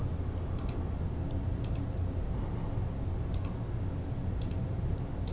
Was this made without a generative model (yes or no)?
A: yes